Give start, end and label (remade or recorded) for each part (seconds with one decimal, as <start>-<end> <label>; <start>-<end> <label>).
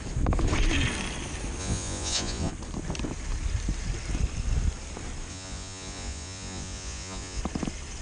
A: 0.0-1.6 recorded; 1.6-2.5 remade; 2.5-5.3 recorded; 5.3-7.4 remade; 7.4-8.0 recorded